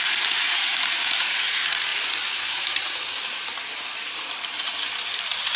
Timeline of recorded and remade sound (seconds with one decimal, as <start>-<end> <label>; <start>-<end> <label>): 0.0-1.9 remade; 1.9-5.0 recorded; 5.0-5.6 remade

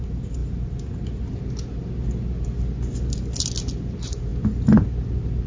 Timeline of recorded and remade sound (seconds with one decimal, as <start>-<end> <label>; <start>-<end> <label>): 0.0-5.5 recorded

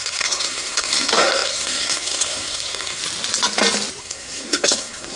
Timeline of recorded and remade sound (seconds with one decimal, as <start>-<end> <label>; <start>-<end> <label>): 0.0-3.0 remade; 3.0-4.0 recorded; 4.0-5.2 remade

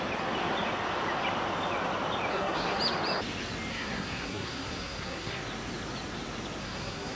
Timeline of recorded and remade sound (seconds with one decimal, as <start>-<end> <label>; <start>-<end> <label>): 0.0-2.3 recorded; 2.3-2.8 remade; 2.8-3.7 recorded; 3.7-5.4 remade; 5.4-6.6 recorded; 6.6-7.2 remade